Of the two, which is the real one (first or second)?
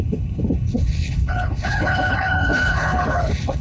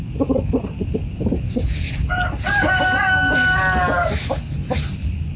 second